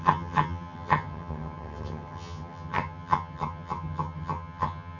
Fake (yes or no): yes